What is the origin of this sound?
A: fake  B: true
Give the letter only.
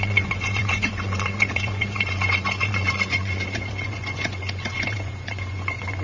A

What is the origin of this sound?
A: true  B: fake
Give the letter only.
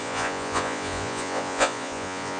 B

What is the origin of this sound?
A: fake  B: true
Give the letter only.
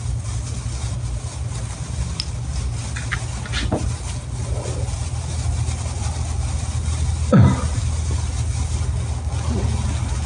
B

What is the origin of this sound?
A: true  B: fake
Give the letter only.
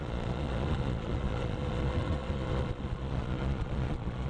B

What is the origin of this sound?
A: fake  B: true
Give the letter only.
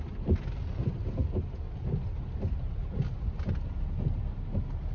B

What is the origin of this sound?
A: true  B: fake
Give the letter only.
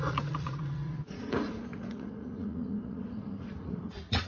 B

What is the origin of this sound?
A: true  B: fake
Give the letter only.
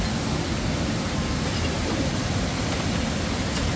A